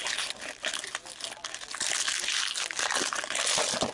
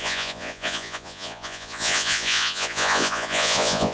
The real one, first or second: first